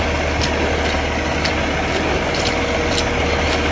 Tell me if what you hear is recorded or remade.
recorded